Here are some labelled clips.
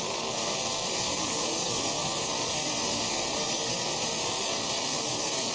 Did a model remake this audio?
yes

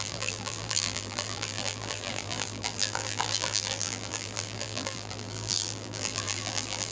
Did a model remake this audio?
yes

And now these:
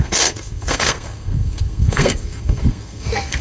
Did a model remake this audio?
yes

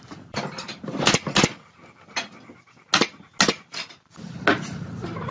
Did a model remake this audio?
no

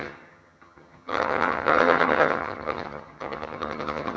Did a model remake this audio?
yes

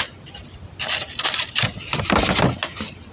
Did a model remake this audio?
no